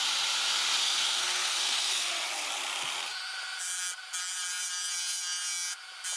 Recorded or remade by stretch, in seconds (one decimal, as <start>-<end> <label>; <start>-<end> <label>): 0.0-0.8 recorded; 0.8-2.1 remade; 2.1-6.2 recorded